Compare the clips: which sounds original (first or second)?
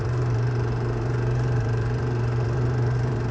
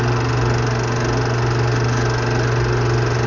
second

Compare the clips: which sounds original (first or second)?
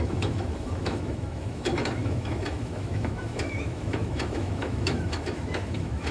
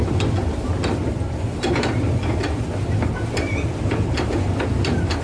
second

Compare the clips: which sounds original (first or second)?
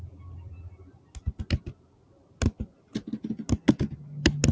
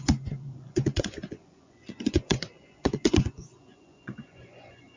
first